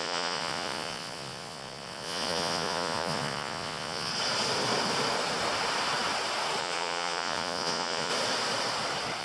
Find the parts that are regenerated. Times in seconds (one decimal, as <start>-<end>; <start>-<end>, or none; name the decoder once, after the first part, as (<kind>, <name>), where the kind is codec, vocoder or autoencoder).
0.0-4.1 (vocoder, Vocos); 6.6-8.1